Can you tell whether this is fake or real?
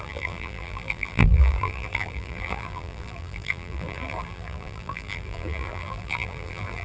fake